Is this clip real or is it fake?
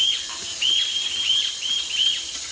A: fake